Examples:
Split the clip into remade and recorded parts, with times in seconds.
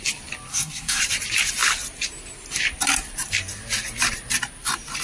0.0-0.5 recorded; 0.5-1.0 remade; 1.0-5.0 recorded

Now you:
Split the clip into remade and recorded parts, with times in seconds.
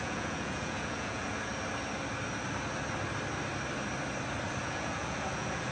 0.0-1.5 remade; 1.5-4.6 recorded; 4.6-5.7 remade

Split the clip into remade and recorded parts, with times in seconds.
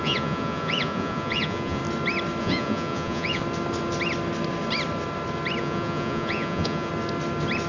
0.0-1.8 remade; 1.8-2.4 recorded; 2.4-3.4 remade; 3.4-5.6 recorded; 5.6-6.9 remade; 6.9-7.7 recorded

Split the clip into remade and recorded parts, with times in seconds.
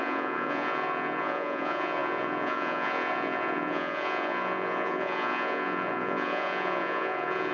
0.0-7.5 remade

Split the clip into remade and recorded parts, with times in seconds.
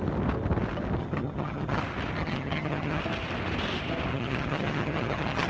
0.0-1.0 recorded; 1.0-1.8 remade; 1.8-2.2 recorded; 2.2-3.0 remade; 3.0-4.1 recorded; 4.1-5.5 remade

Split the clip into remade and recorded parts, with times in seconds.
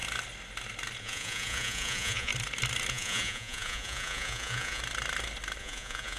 0.0-1.0 recorded; 1.0-2.3 remade; 2.3-2.9 recorded; 2.9-4.8 remade; 4.8-5.6 recorded; 5.6-6.2 remade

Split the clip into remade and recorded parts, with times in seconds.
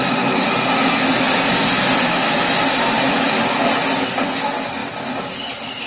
0.0-1.3 recorded; 1.3-2.5 remade; 2.5-5.9 recorded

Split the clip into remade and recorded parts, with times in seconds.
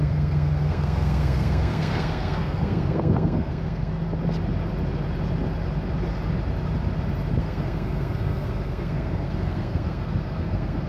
0.0-3.9 remade; 3.9-7.4 recorded; 7.4-10.9 remade